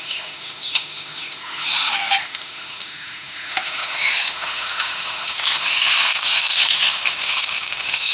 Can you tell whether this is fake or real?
fake